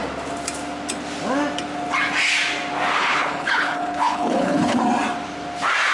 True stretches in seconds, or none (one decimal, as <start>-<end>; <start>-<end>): 0.0-3.0; 4.8-5.9